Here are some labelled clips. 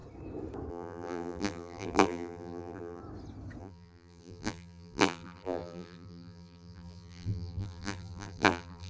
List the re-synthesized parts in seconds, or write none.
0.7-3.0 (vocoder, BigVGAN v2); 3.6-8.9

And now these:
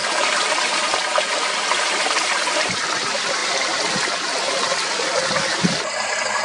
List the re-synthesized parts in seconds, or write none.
none

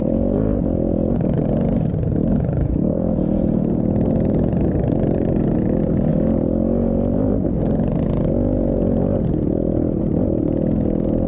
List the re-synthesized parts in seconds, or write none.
0.0-0.6 (vocoder, BigVGAN v2); 2.2-5.4

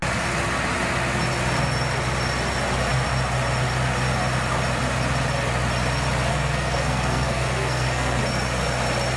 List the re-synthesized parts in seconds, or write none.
6.3-8.2 (codec, SNAC)

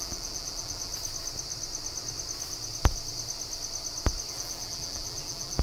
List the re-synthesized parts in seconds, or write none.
0.0-0.9 (vocoder, BigVGAN v2); 4.3-5.6